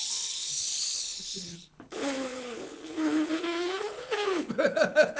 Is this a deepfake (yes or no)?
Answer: yes